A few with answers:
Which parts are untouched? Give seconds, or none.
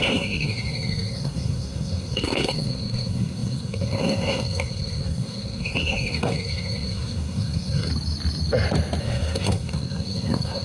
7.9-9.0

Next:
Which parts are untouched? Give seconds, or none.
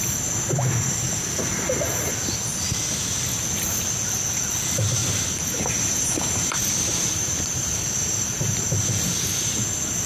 0.0-5.0; 9.5-10.1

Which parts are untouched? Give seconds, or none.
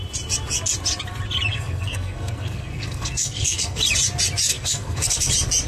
0.0-1.5; 3.8-4.5; 5.3-5.7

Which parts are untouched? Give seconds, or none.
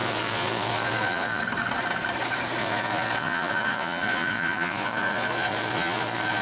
1.4-2.6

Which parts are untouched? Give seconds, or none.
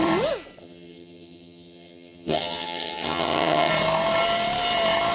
0.0-0.6; 3.7-5.1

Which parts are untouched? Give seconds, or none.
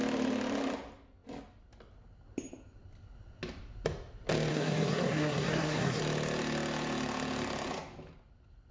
0.0-4.5; 6.0-8.7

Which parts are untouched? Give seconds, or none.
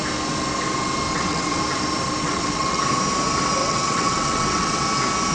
0.0-1.1; 1.6-2.2; 2.8-3.6; 4.8-5.3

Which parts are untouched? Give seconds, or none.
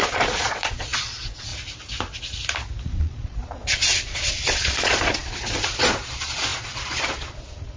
1.5-2.8